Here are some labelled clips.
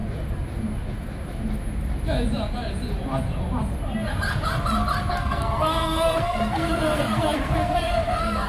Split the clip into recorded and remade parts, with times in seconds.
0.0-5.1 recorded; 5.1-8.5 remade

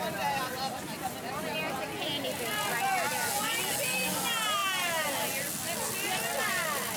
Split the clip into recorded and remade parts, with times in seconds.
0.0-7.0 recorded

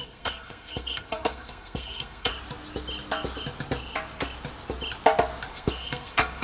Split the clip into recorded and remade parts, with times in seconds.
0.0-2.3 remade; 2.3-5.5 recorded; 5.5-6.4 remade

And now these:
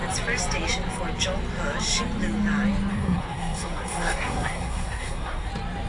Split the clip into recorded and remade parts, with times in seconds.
0.0-2.9 recorded; 2.9-5.5 remade; 5.5-5.9 recorded

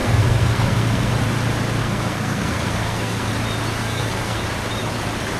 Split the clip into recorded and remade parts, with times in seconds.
0.0-1.1 remade; 1.1-1.8 recorded; 1.8-3.3 remade; 3.3-3.8 recorded; 3.8-4.4 remade; 4.4-5.4 recorded

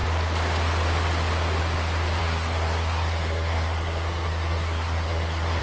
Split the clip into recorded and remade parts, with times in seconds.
0.0-2.2 recorded; 2.2-5.6 remade